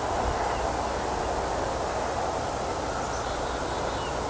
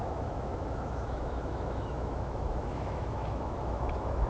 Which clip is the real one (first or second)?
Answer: first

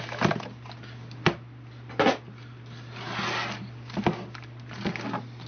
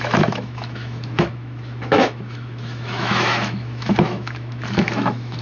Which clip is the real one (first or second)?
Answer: first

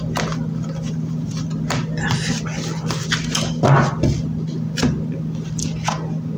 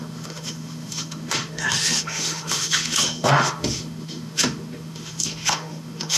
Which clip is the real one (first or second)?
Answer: first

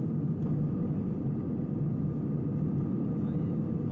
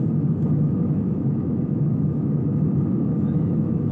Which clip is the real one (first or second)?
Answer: first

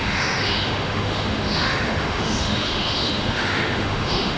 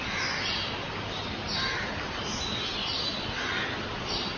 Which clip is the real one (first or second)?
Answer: second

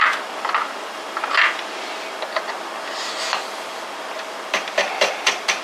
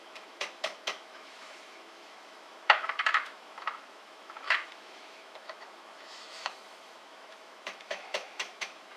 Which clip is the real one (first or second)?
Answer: first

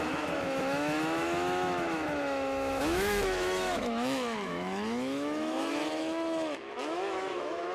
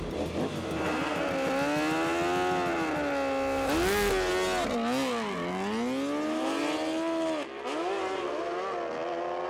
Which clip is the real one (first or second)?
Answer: second